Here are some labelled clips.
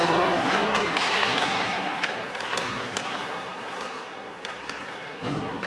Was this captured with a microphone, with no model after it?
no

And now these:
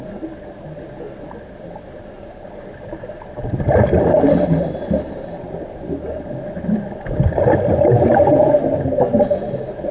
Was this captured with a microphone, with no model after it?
yes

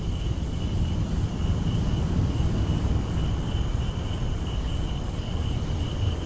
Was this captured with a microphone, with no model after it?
yes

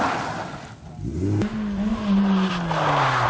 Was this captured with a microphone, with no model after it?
yes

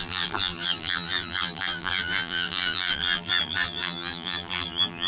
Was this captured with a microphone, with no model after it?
no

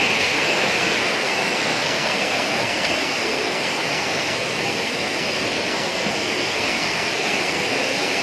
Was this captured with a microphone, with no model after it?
no